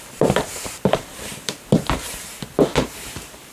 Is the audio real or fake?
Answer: fake